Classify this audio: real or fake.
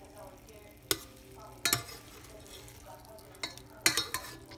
real